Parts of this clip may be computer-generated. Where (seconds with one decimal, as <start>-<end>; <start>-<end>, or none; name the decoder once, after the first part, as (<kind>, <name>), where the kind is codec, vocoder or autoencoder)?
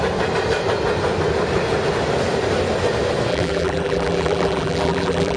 3.3-5.4 (vocoder, BigVGAN v2)